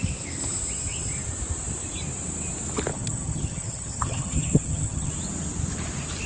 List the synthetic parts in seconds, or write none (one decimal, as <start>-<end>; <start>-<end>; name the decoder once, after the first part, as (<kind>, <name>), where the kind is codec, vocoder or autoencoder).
2.9-5.1 (vocoder, HiFi-GAN)